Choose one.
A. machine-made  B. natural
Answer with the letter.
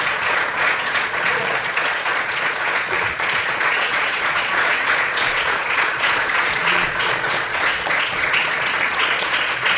A